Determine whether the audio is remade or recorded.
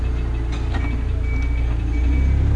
recorded